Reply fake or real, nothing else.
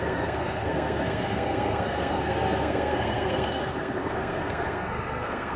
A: fake